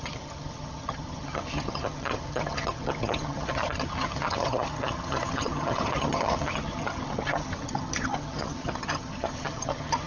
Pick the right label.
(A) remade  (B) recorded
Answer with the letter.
A